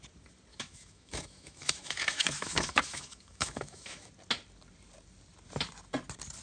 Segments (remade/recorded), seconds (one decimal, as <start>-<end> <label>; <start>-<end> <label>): 0.0-0.5 recorded; 0.5-4.1 remade; 4.1-6.4 recorded